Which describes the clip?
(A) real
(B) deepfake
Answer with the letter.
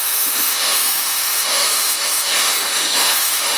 B